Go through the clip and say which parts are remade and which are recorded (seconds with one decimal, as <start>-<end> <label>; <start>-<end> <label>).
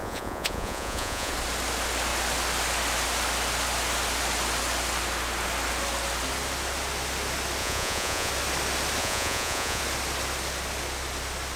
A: 0.0-1.3 remade; 1.3-7.6 recorded; 7.6-8.3 remade; 8.3-9.0 recorded; 9.0-9.8 remade; 9.8-11.6 recorded